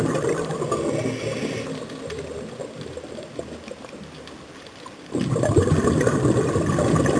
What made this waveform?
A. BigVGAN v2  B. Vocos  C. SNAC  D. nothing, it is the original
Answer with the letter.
D